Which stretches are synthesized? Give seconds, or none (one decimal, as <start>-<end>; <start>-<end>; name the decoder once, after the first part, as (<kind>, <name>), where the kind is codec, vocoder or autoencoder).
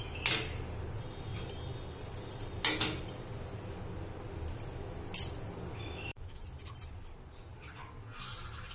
5.7-6.4 (autoencoder, DAC-VAE)